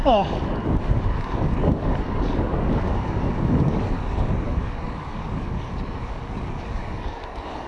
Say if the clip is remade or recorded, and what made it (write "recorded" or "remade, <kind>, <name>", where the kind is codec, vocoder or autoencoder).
remade, codec, DAC